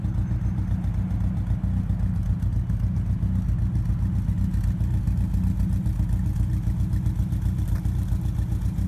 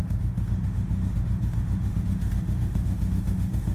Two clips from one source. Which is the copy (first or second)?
second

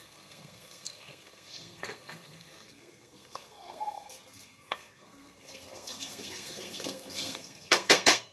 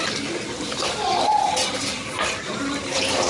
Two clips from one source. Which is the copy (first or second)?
first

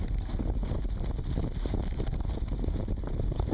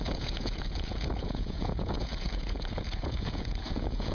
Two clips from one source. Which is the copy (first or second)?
second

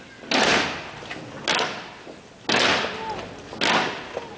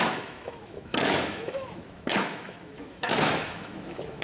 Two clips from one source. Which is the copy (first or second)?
second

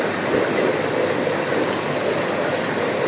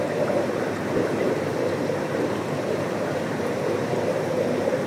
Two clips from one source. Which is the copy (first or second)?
second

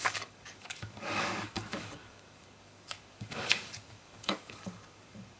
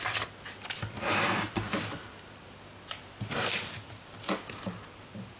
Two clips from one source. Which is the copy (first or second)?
first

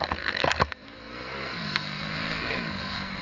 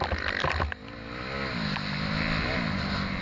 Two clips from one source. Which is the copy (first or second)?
first